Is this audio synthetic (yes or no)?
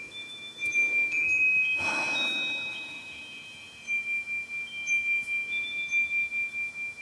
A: yes